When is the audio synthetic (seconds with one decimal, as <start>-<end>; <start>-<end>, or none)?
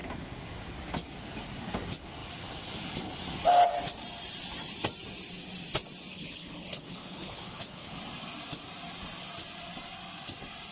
6.1-7.9